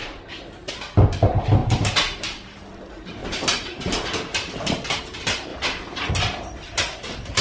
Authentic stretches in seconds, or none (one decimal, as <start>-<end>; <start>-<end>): 0.7-1.6; 2.6-3.2; 5.0-5.5; 6.1-7.4